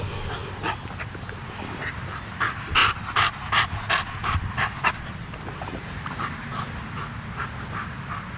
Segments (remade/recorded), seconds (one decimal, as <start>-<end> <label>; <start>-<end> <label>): 0.0-8.4 recorded